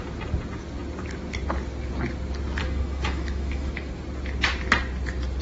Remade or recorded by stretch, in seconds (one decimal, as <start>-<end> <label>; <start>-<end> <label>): 0.0-2.6 recorded; 2.6-3.9 remade; 3.9-5.4 recorded